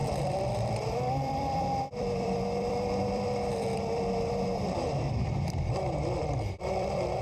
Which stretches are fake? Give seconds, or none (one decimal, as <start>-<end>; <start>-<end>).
0.0-7.2